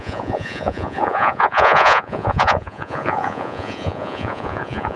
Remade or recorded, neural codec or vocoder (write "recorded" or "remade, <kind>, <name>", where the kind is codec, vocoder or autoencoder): remade, vocoder, Vocos